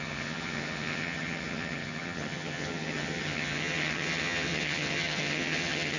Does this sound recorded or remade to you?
remade